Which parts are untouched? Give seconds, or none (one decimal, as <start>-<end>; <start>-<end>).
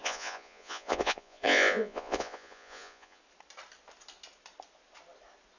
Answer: 3.2-5.6